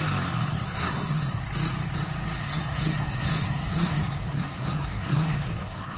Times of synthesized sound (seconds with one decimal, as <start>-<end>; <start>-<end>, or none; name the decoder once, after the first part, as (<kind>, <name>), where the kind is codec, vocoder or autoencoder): 0.5-1.4 (codec, SNAC); 2.4-6.0